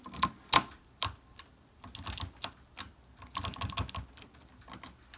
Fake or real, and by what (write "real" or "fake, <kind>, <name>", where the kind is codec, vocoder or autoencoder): real